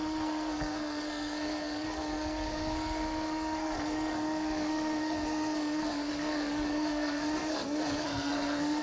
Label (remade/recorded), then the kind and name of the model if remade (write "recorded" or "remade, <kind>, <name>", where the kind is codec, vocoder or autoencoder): remade, codec, SNAC